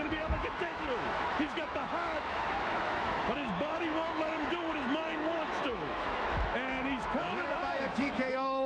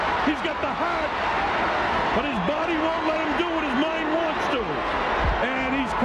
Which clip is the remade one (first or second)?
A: first